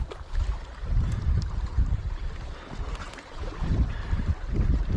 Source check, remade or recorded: recorded